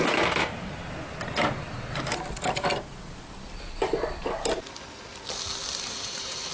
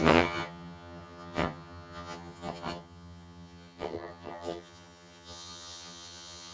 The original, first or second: first